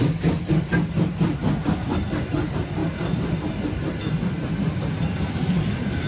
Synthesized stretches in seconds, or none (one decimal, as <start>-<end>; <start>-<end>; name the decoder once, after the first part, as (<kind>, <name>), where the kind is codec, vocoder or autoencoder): none